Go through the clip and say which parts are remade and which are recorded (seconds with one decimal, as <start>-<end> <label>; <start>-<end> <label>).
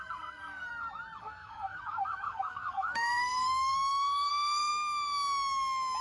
0.0-0.7 remade; 0.7-1.2 recorded; 1.2-4.7 remade; 4.7-6.0 recorded